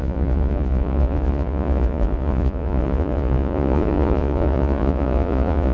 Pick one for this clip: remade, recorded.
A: remade